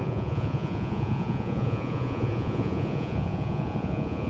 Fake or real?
fake